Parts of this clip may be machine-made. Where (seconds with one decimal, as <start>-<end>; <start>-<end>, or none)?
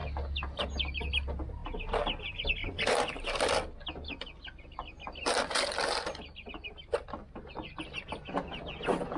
none